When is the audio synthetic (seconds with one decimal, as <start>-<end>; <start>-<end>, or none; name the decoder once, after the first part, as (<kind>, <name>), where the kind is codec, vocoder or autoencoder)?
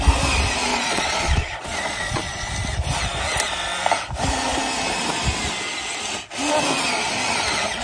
0.7-2.5 (vocoder, Vocos)